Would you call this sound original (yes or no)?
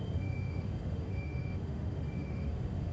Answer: no